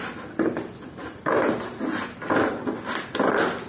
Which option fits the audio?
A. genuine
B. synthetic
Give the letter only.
A